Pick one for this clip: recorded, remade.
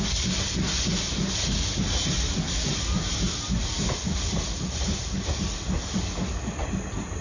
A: recorded